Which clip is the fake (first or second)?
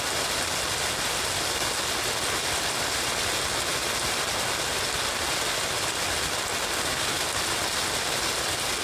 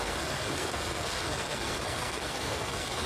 second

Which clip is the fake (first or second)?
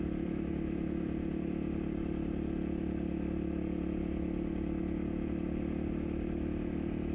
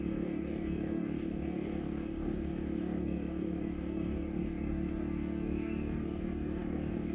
second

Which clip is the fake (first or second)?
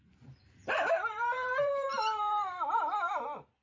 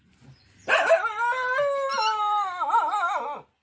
first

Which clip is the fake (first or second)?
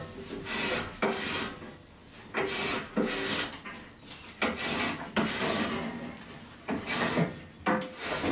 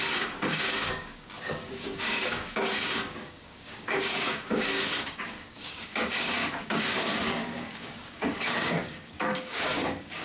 second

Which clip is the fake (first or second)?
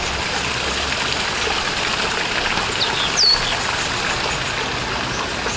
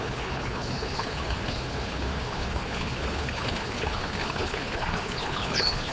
second